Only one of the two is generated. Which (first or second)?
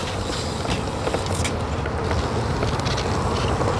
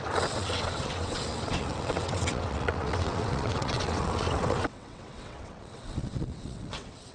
second